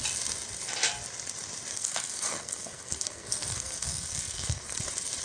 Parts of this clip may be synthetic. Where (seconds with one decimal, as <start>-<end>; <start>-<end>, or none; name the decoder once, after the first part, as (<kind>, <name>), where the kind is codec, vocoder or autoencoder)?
1.7-4.8 (codec, SNAC)